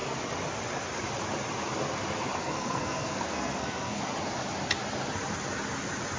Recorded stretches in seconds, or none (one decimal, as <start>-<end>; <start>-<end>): 0.0-2.4; 4.0-6.2